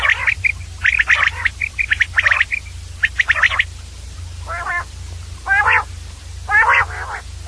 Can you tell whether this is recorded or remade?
recorded